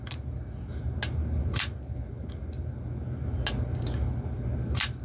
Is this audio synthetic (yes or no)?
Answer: no